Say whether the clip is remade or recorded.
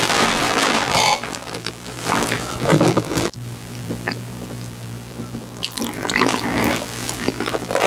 remade